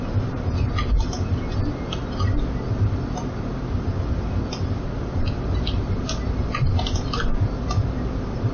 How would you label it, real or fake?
real